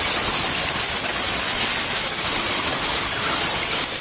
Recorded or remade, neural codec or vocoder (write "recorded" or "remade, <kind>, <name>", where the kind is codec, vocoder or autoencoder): recorded